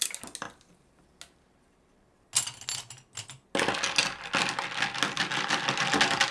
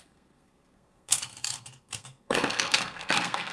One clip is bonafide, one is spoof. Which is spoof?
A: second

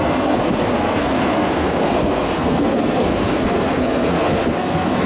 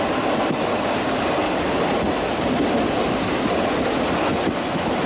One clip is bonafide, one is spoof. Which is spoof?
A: first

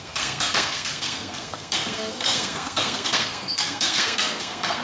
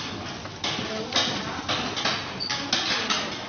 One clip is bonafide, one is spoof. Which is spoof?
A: first